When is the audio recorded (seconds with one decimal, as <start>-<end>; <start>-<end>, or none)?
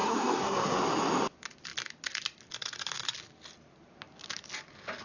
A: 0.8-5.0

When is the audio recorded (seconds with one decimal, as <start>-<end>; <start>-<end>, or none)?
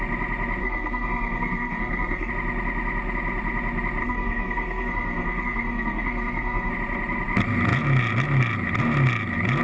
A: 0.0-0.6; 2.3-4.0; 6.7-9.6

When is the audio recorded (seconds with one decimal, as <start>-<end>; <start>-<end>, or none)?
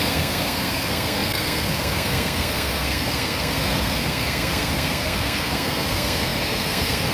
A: none